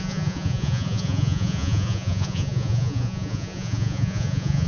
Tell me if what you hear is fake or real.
fake